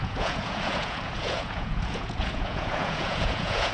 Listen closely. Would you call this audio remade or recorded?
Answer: remade